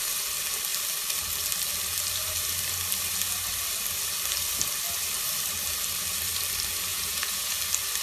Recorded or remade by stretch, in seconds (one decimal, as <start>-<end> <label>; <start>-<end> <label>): 0.0-6.9 recorded; 6.9-7.6 remade; 7.6-8.0 recorded